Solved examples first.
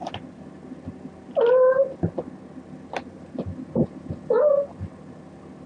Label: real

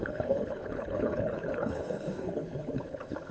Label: fake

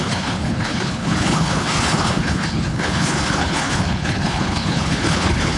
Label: fake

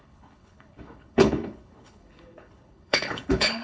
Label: fake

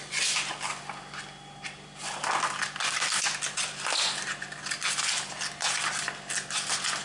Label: real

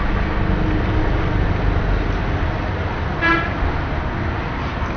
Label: real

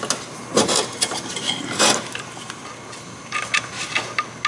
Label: real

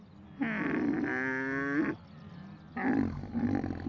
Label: real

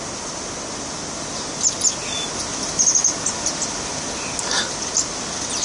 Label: real